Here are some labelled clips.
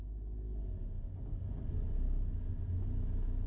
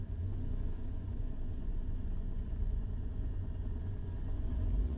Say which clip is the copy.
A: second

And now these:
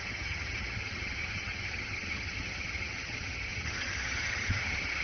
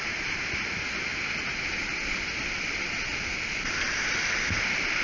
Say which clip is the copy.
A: first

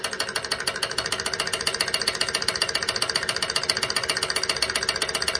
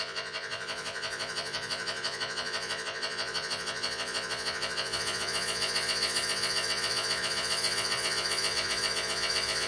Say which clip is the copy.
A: second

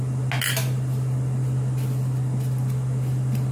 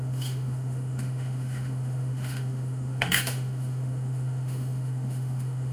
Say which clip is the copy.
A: second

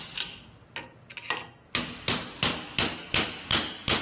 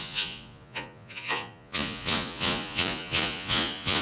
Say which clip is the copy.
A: second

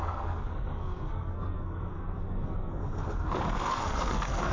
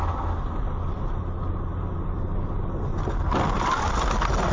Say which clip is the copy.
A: first